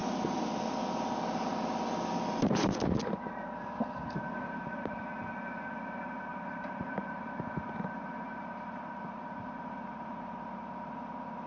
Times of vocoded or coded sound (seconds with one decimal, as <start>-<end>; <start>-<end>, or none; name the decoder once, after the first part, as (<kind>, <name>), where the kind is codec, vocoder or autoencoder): 6.3-7.5 (vocoder, BigVGAN v2); 8.0-10.9